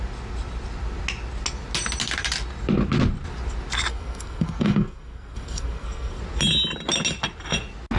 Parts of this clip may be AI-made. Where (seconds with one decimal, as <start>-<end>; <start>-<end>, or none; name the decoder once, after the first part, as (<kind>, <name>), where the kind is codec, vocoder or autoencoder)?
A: 3.9-6.2 (codec, SNAC)